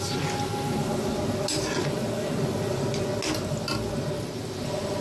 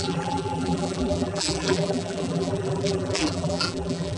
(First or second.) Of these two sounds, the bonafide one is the first